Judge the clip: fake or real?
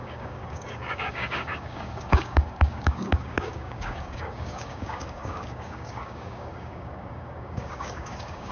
fake